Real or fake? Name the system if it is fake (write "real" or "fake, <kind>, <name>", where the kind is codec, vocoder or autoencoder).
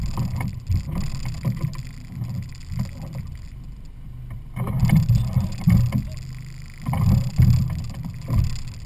real